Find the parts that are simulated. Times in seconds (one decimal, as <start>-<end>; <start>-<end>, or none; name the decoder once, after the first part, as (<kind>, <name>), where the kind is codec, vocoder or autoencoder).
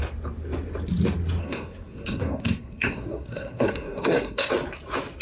1.4-4.5 (codec, SNAC)